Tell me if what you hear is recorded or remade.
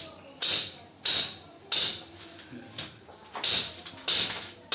recorded